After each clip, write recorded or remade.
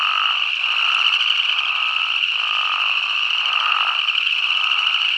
recorded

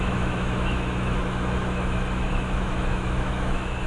remade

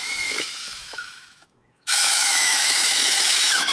remade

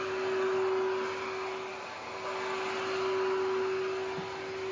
recorded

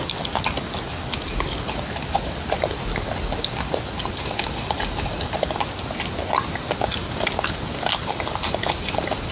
recorded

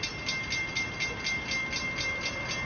recorded